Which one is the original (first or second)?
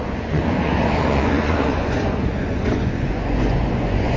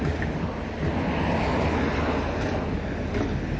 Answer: second